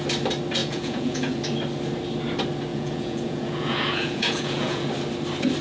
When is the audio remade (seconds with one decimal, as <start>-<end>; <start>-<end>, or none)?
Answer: 0.6-1.4; 2.7-4.9